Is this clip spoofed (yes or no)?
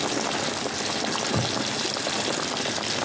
no